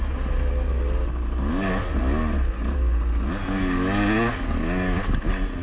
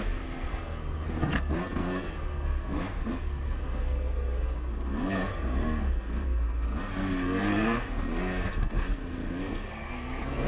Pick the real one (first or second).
first